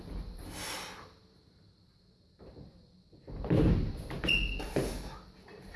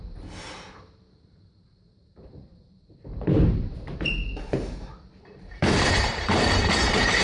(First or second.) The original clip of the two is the first